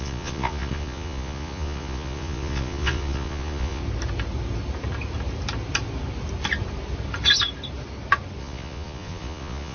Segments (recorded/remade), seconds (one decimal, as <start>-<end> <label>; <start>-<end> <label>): 0.0-3.8 remade; 3.8-8.4 recorded; 8.4-9.7 remade